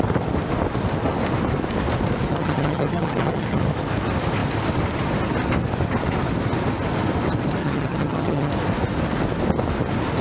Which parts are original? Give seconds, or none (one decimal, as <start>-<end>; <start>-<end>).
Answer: 0.0-2.3; 3.6-7.6; 8.5-10.2